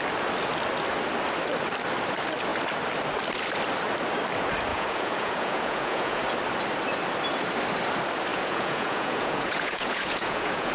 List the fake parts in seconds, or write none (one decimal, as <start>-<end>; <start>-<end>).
4.7-6.2; 8.3-10.7